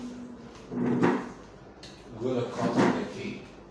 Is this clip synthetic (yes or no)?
no